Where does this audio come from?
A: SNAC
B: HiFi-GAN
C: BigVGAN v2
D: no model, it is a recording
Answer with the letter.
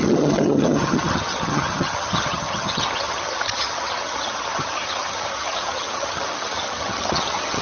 B